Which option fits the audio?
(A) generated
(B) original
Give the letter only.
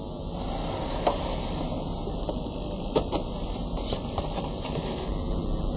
B